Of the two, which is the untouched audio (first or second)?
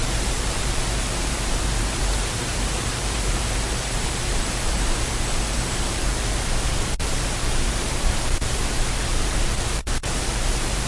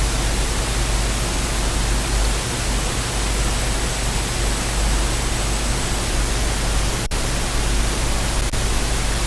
second